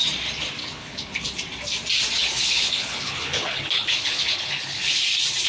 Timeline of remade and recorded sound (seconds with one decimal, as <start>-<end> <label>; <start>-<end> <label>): 0.0-0.6 recorded; 0.6-1.3 remade; 1.3-2.2 recorded; 2.2-5.0 remade; 5.0-5.5 recorded